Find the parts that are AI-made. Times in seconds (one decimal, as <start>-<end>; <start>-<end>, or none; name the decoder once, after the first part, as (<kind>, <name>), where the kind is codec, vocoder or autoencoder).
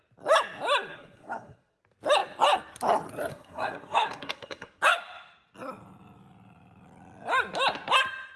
0.9-1.8 (codec, SNAC); 3.3-4.8